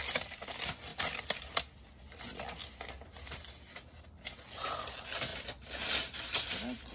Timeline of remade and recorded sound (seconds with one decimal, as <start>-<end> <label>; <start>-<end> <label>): 0.0-6.9 recorded